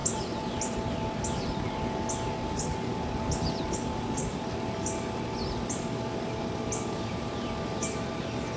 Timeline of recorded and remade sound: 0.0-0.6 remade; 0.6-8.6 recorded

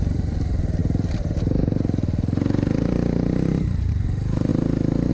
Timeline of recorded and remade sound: 0.0-4.5 remade; 4.5-5.1 recorded

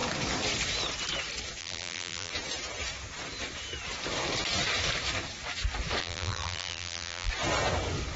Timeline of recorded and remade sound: 0.0-1.6 recorded; 1.6-2.3 remade; 2.3-6.0 recorded; 6.0-7.3 remade; 7.3-8.2 recorded

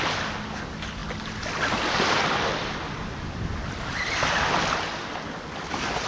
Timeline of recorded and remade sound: 0.0-6.1 recorded